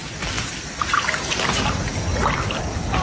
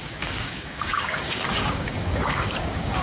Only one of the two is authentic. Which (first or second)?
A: first